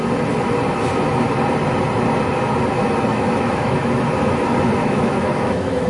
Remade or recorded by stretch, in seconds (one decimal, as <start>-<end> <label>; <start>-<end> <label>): 0.0-3.1 recorded; 3.1-4.0 remade; 4.0-4.8 recorded; 4.8-5.9 remade